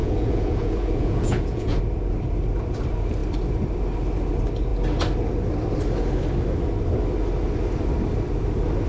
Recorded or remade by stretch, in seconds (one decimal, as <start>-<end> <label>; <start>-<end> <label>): 0.0-1.8 remade; 1.8-8.9 recorded